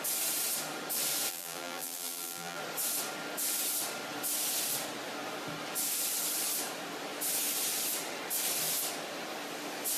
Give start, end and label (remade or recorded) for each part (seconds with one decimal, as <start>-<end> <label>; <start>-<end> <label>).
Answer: 0.0-1.3 recorded; 1.3-2.6 remade; 2.6-10.0 recorded